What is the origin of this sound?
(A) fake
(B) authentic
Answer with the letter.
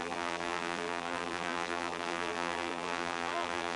A